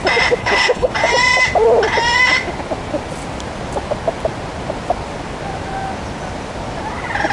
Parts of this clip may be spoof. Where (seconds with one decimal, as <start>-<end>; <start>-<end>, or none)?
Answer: 0.4-0.9